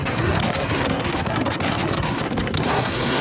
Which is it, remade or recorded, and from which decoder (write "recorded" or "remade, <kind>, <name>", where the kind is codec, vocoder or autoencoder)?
remade, codec, SNAC